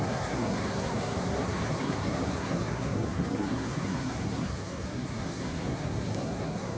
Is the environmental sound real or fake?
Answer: fake